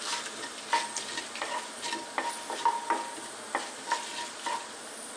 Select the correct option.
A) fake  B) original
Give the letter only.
B